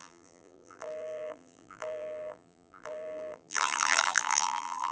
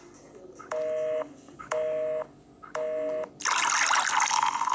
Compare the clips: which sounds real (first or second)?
second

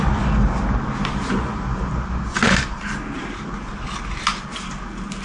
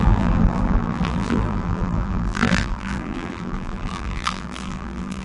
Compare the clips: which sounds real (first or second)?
first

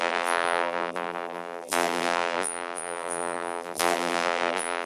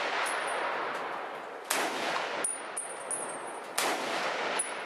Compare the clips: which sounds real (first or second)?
second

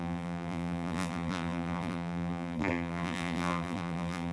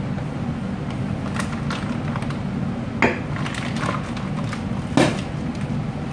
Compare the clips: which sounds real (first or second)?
second